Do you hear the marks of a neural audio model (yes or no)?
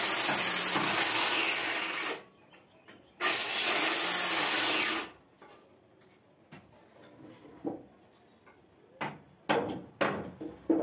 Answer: no